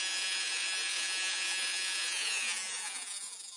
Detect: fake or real fake